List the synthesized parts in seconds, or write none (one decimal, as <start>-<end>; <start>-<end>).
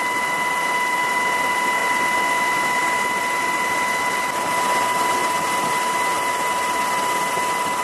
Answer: none